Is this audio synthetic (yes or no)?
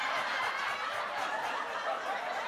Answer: no